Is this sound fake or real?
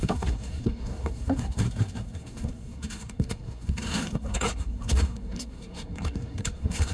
fake